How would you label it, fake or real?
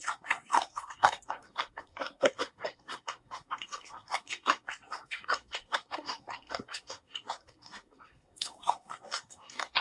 fake